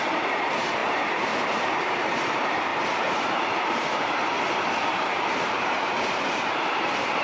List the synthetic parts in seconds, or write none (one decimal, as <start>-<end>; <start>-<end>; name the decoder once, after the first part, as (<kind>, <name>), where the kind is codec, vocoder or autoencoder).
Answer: 0.0-7.2 (vocoder, BigVGAN v2)